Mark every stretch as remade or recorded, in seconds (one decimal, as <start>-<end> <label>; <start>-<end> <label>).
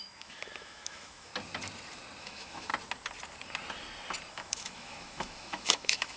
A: 0.0-1.3 remade; 1.3-2.2 recorded; 2.2-2.7 remade; 2.7-4.3 recorded; 4.3-6.2 remade